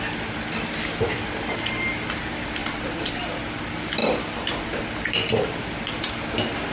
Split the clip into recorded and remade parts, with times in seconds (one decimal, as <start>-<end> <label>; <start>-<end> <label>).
0.0-2.6 recorded; 2.6-3.1 remade; 3.1-4.0 recorded; 4.0-5.9 remade; 5.9-6.7 recorded